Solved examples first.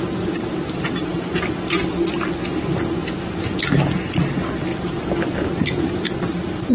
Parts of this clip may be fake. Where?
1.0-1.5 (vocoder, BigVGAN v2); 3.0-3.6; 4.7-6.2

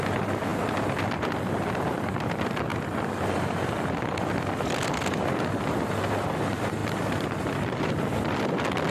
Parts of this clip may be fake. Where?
0.5-2.3 (vocoder, BigVGAN v2); 6.8-7.4

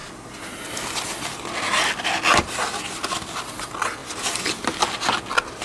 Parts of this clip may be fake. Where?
none

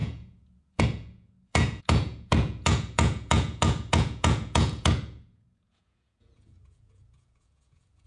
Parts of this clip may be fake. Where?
0.0-8.1 (vocoder, Vocos)

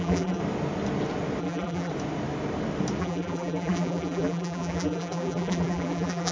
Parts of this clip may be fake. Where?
0.0-0.4 (vocoder, BigVGAN v2); 1.4-1.9; 3.0-6.3

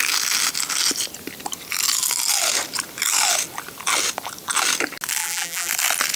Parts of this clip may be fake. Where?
5.2-5.7 (vocoder, BigVGAN v2)

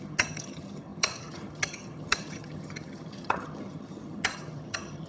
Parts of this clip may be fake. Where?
0.0-5.1 (vocoder, HiFi-GAN)

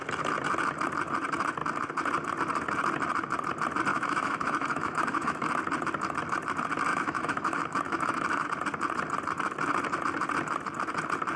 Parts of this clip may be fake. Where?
3.9-5.5 (autoencoder, DAC-VAE); 6.9-8.5